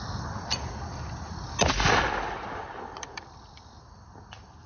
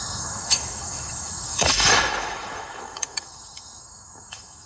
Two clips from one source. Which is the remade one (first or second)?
second